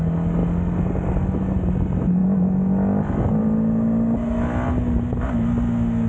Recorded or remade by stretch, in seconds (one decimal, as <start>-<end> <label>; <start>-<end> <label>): 0.0-6.1 recorded